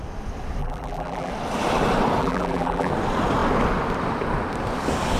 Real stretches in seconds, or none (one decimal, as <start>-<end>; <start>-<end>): 0.0-0.6; 1.3-2.2; 2.9-5.2